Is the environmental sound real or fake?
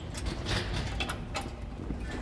real